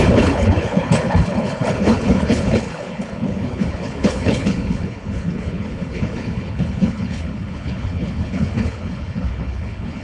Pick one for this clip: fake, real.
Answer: fake